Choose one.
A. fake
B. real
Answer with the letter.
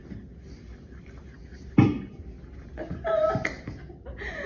B